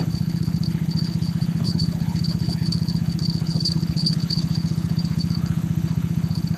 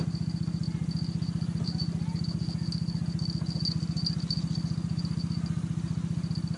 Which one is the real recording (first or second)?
second